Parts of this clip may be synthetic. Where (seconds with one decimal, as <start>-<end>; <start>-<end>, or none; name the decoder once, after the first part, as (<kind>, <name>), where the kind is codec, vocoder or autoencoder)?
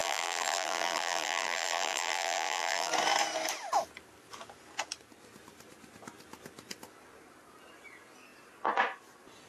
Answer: 0.0-2.9 (vocoder, BigVGAN v2)